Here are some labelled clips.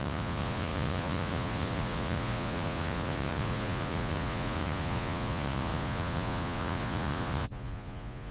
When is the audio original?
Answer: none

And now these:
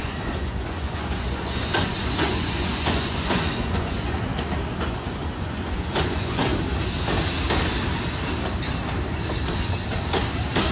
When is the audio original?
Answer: 4.3-4.8; 6.5-10.7

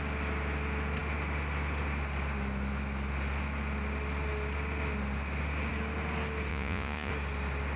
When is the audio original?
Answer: 0.0-6.5; 7.1-7.8

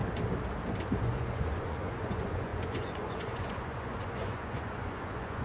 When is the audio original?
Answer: 0.0-0.9

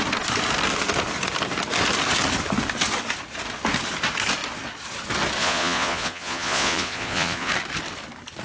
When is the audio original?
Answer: 0.0-5.4; 7.5-8.4

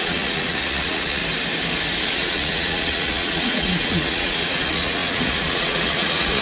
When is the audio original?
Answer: 1.2-2.0

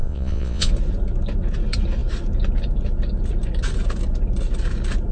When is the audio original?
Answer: 0.7-5.1